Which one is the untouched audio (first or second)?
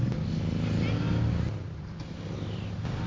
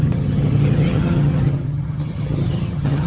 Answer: first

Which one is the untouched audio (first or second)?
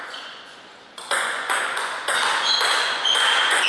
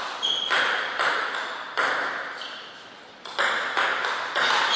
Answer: second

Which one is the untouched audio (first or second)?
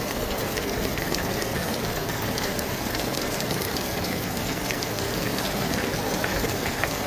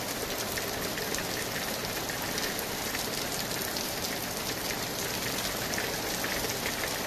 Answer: second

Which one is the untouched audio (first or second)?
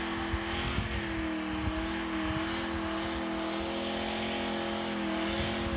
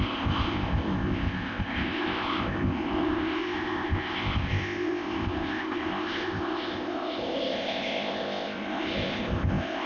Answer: first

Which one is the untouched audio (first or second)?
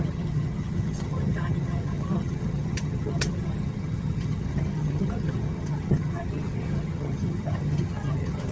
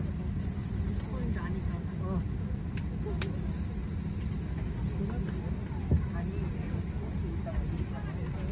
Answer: second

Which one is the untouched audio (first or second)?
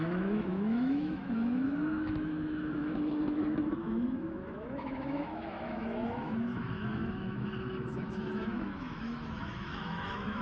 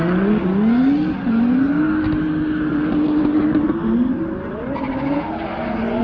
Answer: second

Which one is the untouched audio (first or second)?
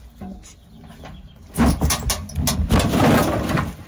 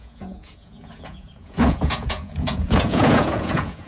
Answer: first